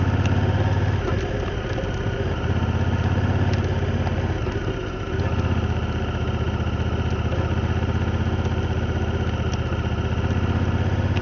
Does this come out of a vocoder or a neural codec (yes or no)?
no